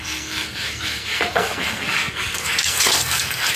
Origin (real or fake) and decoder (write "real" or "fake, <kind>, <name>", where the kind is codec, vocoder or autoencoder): fake, codec, SNAC